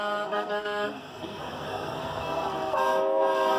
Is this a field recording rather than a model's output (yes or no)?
no